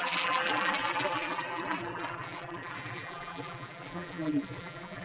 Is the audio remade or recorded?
remade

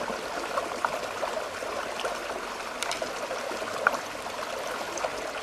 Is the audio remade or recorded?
recorded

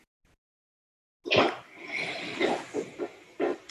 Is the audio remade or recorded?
recorded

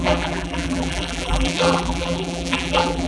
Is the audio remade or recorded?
remade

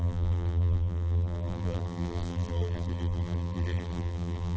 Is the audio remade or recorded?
remade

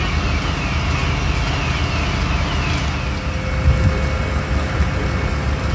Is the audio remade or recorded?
recorded